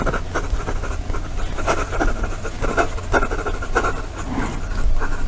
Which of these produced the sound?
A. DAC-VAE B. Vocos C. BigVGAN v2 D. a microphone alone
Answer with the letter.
D